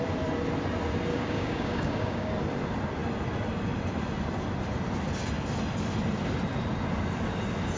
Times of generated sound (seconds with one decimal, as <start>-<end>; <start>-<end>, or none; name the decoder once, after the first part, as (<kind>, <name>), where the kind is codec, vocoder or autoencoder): 1.1-2.3 (codec, DAC)